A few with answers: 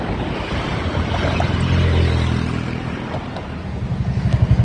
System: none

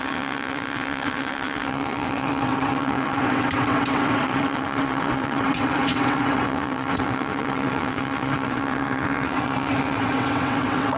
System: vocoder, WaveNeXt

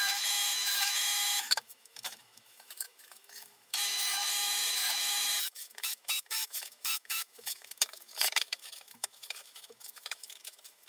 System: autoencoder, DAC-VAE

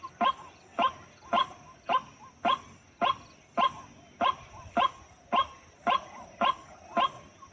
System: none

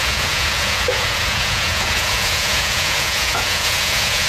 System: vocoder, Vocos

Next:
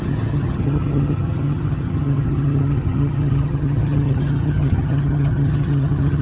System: vocoder, HiFi-GAN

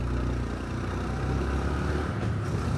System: none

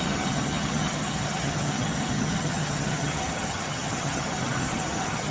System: vocoder, HiFi-GAN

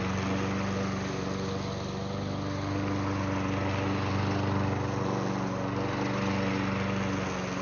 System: none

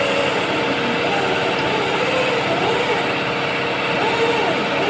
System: none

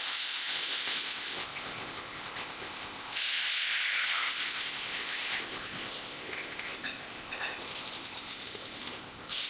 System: codec, ZipCodec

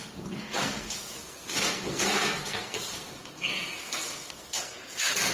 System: codec, SNAC